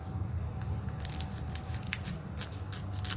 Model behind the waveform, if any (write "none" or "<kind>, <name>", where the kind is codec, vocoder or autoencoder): none